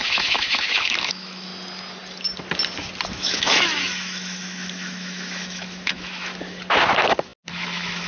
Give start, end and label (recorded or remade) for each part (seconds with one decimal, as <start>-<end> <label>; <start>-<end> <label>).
0.0-1.5 remade; 1.5-3.1 recorded; 3.1-6.3 remade; 6.3-7.5 recorded; 7.5-8.1 remade